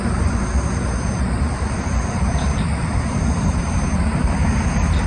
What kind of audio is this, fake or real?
fake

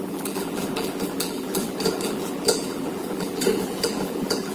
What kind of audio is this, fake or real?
fake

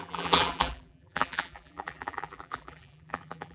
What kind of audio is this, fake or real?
fake